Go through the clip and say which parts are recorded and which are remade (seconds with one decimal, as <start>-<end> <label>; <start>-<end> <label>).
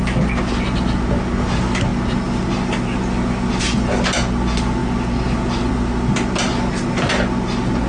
0.0-7.9 recorded